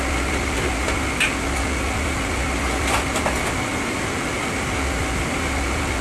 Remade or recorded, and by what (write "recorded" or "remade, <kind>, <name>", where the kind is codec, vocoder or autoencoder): recorded